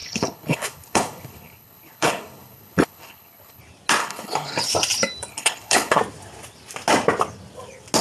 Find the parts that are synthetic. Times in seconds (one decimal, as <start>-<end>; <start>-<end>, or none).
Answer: 0.0-3.6; 4.0-4.6; 5.3-6.0